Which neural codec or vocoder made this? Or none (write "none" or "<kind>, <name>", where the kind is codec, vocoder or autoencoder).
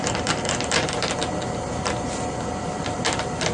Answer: vocoder, BigVGAN v2